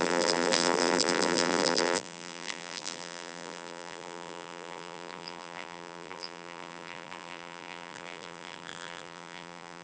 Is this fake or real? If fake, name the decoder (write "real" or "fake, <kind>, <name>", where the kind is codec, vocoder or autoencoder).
fake, vocoder, BigVGAN v2